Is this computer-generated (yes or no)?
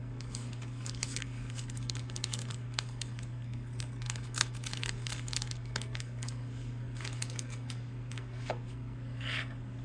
yes